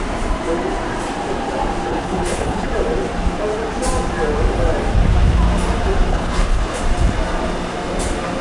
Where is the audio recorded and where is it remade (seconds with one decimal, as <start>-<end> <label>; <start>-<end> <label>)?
0.0-1.9 recorded; 1.9-2.7 remade; 2.7-6.1 recorded; 6.1-6.8 remade; 6.8-8.4 recorded

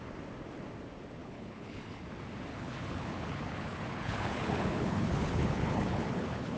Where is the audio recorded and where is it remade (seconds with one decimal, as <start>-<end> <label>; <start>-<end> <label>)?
0.0-1.2 recorded; 1.2-2.0 remade; 2.0-2.5 recorded; 2.5-6.6 remade